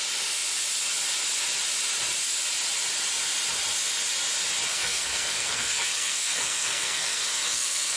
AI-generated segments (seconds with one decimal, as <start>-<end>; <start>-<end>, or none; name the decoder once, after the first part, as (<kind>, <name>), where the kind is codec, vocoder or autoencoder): 4.7-8.0 (codec, SNAC)